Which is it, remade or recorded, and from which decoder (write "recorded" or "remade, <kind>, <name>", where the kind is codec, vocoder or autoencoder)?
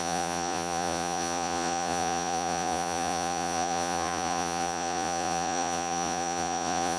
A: remade, vocoder, Vocos